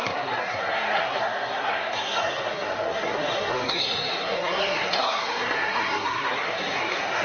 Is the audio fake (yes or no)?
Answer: yes